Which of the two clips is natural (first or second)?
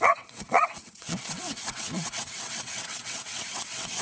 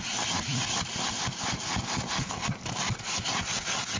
second